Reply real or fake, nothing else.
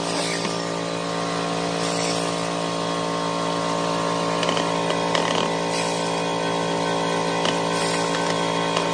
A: real